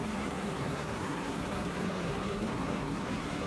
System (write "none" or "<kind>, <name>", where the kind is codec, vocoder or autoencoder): codec, SNAC